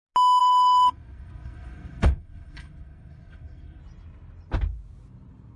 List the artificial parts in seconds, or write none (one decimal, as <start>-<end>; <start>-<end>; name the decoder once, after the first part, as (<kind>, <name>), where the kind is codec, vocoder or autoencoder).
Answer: 0.4-3.8 (codec, SNAC)